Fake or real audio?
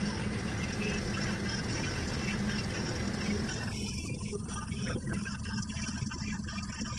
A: real